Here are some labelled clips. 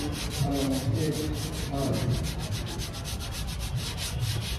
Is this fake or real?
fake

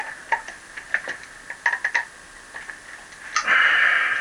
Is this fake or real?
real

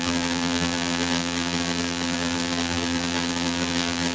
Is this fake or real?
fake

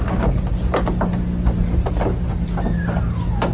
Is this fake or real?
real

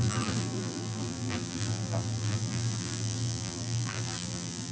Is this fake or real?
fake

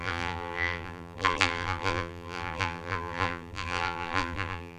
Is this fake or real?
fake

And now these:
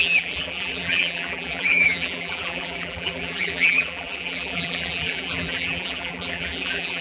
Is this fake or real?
fake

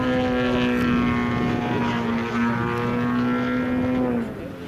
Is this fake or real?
real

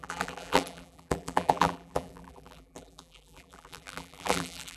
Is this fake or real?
fake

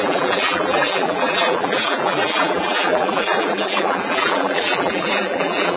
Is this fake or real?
fake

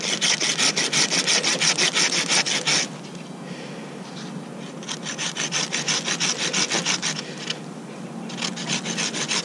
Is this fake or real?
real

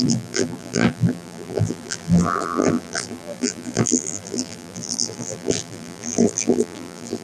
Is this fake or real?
fake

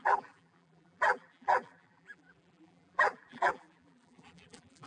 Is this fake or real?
fake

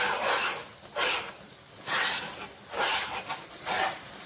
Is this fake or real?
fake